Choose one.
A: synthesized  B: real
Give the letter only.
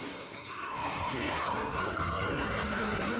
A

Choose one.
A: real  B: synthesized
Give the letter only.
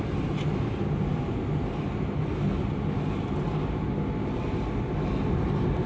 A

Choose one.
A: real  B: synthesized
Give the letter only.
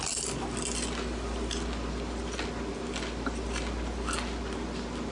A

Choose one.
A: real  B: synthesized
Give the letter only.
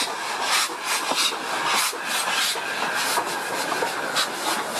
A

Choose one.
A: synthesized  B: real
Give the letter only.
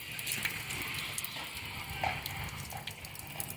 B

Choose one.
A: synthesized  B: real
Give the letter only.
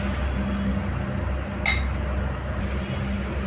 B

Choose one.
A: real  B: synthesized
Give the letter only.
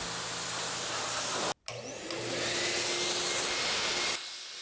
A